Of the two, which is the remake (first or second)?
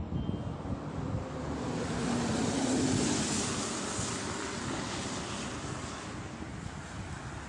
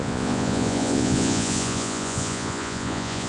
second